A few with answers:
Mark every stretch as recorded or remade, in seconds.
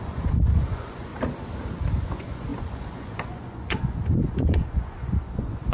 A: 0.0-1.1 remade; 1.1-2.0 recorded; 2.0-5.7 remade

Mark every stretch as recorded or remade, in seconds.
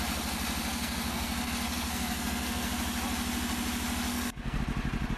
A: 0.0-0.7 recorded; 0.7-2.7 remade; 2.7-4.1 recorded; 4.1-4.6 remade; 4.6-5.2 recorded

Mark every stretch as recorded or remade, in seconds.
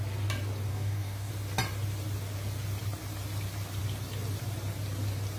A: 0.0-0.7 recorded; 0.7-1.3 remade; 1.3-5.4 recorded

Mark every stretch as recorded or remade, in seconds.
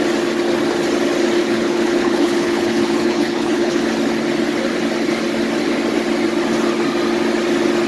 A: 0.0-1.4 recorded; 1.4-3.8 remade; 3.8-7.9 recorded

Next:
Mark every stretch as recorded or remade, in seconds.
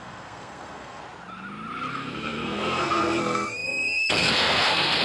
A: 0.0-1.0 remade; 1.0-1.9 recorded; 1.9-5.0 remade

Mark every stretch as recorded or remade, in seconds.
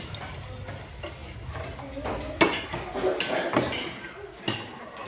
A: 0.0-5.1 recorded